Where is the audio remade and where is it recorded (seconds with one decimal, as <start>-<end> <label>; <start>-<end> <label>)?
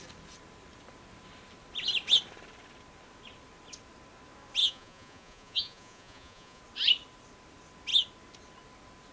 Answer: 0.0-4.6 recorded; 4.6-6.6 remade; 6.6-9.1 recorded